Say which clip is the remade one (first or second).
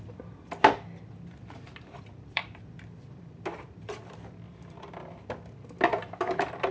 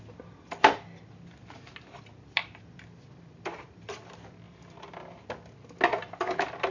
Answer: first